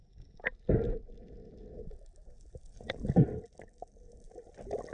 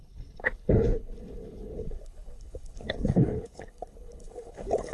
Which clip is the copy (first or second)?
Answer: second